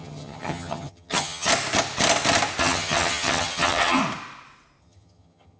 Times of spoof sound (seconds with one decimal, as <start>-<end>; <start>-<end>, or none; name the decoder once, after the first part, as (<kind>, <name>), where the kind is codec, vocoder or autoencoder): 0.0-1.5 (vocoder, HiFi-GAN); 2.6-4.0; 4.8-5.6